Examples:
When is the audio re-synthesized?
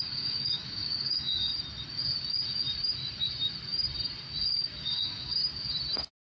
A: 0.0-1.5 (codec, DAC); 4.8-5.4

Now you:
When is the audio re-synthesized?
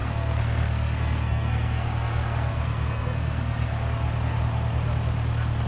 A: 0.0-3.7 (codec, SNAC)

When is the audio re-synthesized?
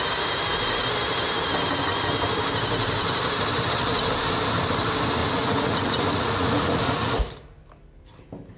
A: 5.2-7.1 (vocoder, Vocos)